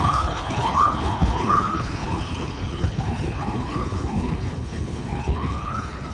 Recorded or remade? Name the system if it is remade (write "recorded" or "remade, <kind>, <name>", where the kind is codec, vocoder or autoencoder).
remade, codec, HILCodec